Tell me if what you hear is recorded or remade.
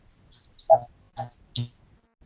recorded